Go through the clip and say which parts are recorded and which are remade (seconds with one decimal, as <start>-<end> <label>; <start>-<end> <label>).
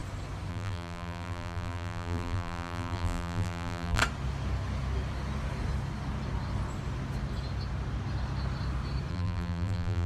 0.0-0.5 recorded; 0.5-4.0 remade; 4.0-9.1 recorded; 9.1-10.1 remade